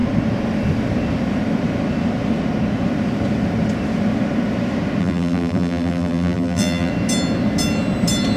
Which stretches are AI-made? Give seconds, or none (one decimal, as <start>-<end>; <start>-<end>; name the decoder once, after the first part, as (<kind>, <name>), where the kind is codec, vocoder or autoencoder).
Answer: 5.0-6.9 (vocoder, BigVGAN v2)